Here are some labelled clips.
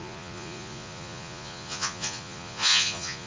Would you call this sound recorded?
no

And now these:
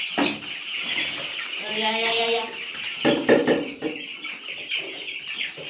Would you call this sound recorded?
yes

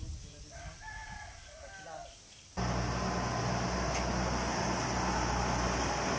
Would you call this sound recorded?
yes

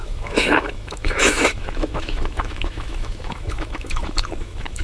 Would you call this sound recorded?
no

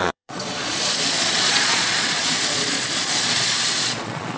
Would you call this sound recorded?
no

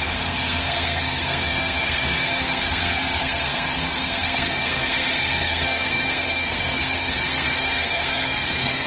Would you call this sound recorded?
no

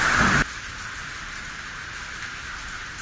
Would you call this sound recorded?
yes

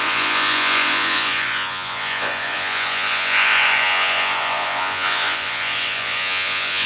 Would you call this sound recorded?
no